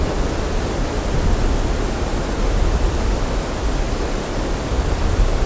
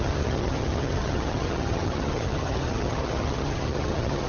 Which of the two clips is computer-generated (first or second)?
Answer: second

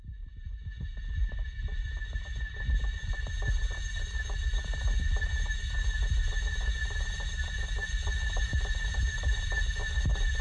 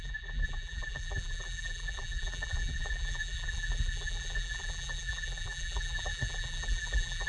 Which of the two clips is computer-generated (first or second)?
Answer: second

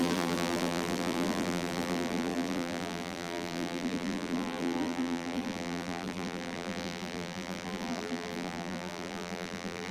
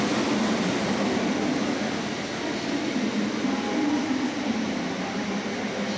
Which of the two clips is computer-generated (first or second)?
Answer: first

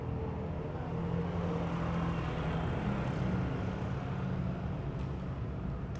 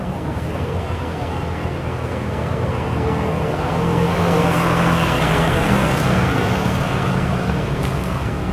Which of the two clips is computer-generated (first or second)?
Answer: second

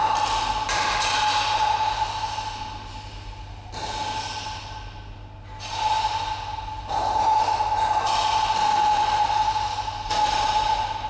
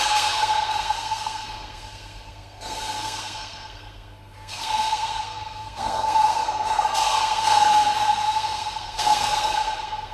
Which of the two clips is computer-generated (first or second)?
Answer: second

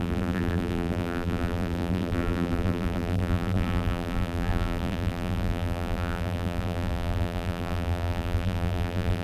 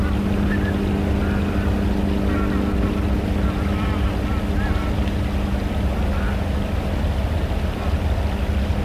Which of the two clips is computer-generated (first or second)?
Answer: first